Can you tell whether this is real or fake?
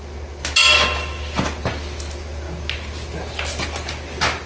real